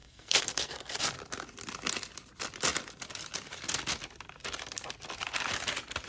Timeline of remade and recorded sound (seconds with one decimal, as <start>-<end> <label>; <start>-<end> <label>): 0.0-1.0 remade; 1.0-6.1 recorded

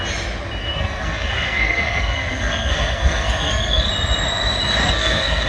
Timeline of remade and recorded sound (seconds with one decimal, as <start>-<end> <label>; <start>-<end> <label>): 0.0-0.6 recorded; 0.6-3.9 remade; 3.9-4.8 recorded; 4.8-5.5 remade

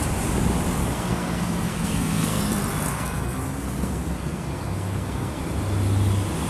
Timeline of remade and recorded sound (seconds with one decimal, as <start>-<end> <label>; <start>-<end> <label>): 0.0-0.8 recorded; 0.8-2.4 remade; 2.4-2.9 recorded; 2.9-5.4 remade; 5.4-6.5 recorded

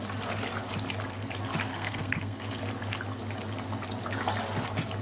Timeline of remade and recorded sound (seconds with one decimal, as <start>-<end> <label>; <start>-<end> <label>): 0.0-1.7 recorded; 1.7-2.5 remade; 2.5-5.0 recorded